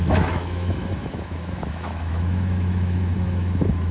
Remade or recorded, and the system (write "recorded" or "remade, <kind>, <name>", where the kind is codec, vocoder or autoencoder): remade, autoencoder, DAC-VAE